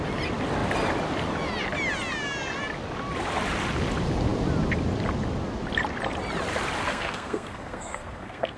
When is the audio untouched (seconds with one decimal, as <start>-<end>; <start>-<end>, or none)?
0.0-6.9